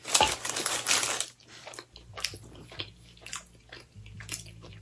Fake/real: real